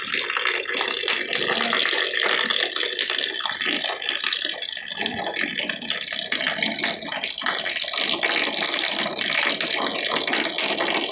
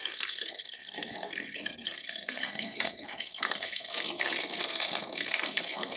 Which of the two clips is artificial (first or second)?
second